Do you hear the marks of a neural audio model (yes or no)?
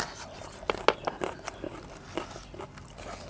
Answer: no